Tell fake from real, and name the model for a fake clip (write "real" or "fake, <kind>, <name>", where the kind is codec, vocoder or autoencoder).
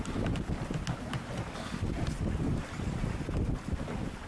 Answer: real